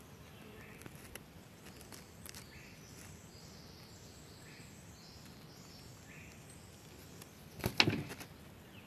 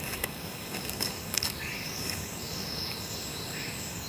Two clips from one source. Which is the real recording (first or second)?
first